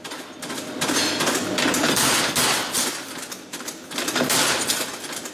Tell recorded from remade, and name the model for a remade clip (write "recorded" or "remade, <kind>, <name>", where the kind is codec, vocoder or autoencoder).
recorded